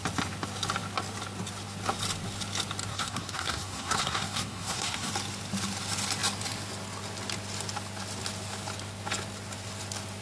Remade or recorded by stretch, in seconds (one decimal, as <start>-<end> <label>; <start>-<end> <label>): 0.0-2.9 recorded; 2.9-5.1 remade; 5.1-10.2 recorded